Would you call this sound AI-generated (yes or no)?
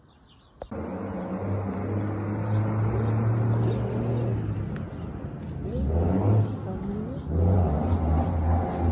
no